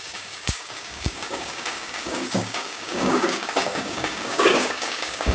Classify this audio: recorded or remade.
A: remade